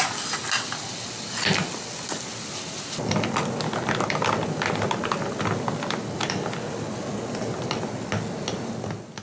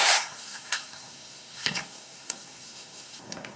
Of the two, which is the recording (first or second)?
first